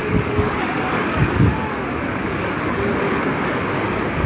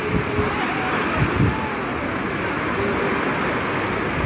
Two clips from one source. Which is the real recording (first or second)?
second